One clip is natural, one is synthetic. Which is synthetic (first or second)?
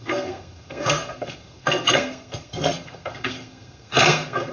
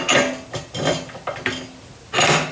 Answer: first